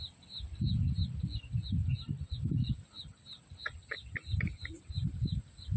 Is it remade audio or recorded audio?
recorded